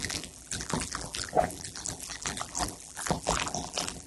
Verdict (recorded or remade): remade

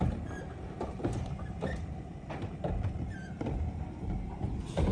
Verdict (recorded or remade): remade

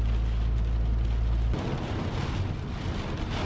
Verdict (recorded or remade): recorded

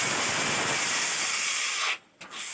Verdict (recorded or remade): recorded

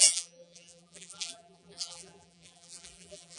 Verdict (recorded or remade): remade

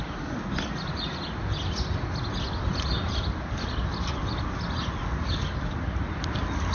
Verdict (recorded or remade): recorded